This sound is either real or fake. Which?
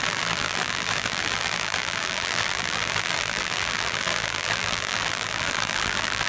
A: fake